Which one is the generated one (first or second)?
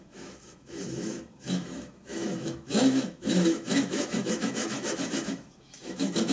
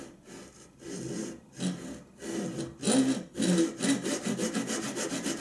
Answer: first